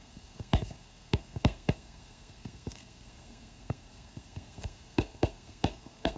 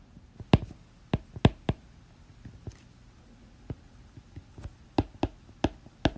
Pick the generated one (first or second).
first